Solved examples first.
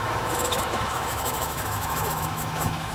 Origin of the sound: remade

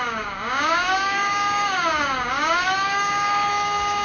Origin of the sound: remade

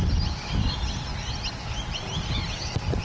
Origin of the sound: recorded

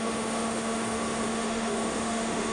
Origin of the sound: remade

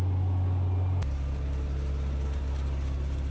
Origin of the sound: recorded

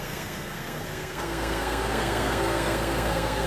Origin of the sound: remade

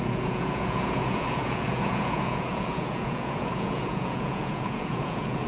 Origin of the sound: remade